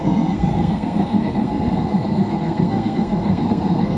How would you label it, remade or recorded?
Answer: remade